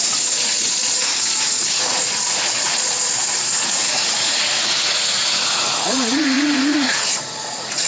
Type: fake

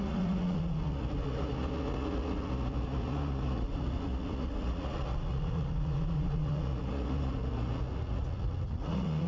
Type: fake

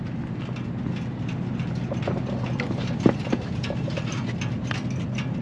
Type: real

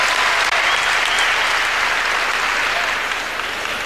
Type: real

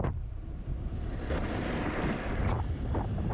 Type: real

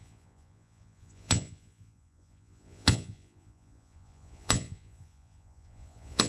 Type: fake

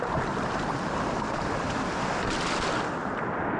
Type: real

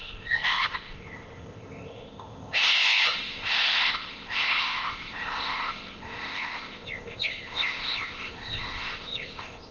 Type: fake